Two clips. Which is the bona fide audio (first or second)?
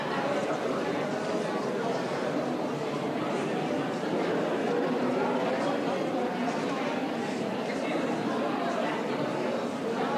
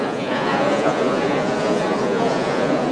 first